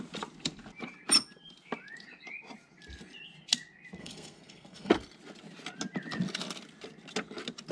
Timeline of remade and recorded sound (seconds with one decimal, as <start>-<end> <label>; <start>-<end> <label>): 0.0-4.0 recorded; 4.0-4.9 remade; 4.9-7.7 recorded